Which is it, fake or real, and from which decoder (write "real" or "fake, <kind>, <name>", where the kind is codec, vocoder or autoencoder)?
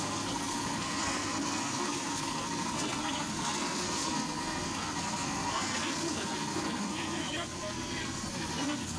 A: fake, codec, SNAC